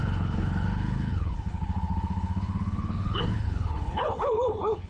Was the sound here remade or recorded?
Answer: remade